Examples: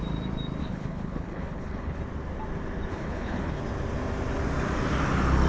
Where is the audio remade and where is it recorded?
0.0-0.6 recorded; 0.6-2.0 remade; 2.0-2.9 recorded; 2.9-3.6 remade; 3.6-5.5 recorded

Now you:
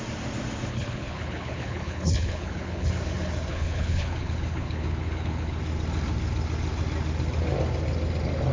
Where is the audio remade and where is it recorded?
0.0-0.7 recorded; 0.7-2.9 remade; 2.9-3.5 recorded; 3.5-5.6 remade; 5.6-8.5 recorded

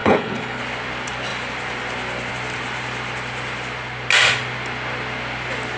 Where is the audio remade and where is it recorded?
0.0-0.6 remade; 0.6-5.8 recorded